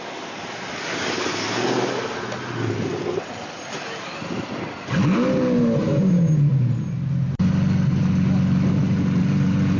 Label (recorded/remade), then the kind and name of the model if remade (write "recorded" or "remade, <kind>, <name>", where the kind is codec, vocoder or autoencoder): recorded